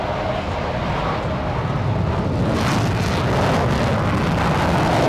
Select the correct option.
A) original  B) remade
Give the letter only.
A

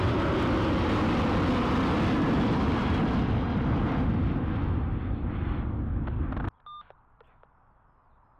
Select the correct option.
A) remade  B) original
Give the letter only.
B